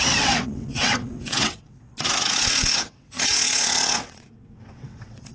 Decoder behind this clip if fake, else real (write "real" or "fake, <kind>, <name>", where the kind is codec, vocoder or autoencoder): fake, vocoder, WaveNeXt